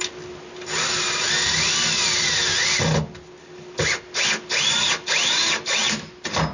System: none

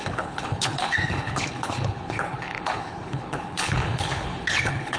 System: codec, HILCodec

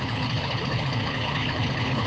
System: codec, HILCodec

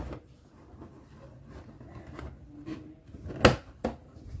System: none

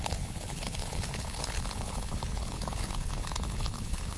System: codec, HILCodec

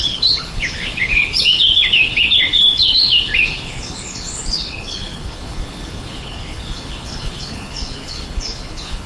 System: codec, HILCodec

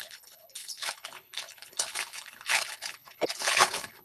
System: codec, HILCodec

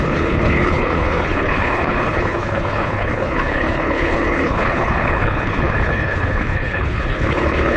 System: codec, HILCodec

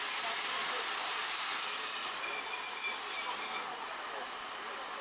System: none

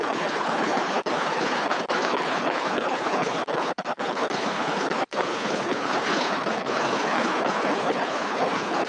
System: codec, HILCodec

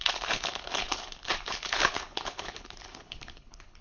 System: codec, HILCodec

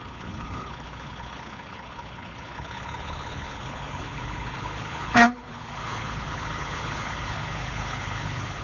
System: codec, HILCodec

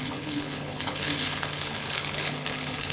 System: codec, HILCodec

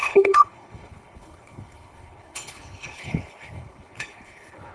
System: codec, HILCodec